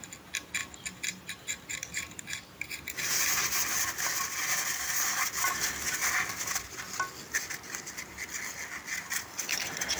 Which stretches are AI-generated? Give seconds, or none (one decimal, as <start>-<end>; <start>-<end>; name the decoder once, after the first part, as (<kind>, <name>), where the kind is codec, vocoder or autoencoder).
0.6-3.1 (vocoder, BigVGAN v2)